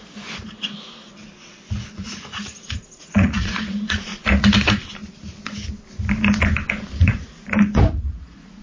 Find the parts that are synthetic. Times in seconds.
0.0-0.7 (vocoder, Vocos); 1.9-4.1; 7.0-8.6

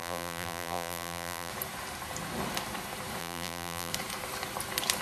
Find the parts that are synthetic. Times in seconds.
0.0-1.5 (vocoder, BigVGAN v2); 3.2-3.9

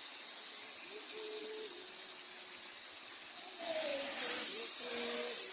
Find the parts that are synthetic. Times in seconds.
3.9-4.9 (vocoder, BigVGAN v2)

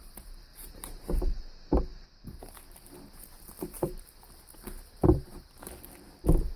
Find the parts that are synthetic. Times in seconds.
0.5-1.4 (vocoder, BigVGAN v2)

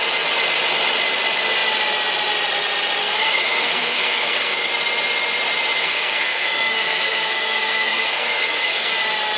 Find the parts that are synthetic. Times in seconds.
3.0-4.7 (codec, SNAC); 5.8-8.9